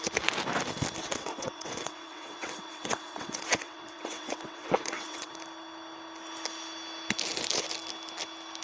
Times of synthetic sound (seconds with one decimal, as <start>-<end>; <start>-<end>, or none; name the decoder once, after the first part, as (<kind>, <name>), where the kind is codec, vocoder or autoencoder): 1.0-5.3 (vocoder, WaveNeXt)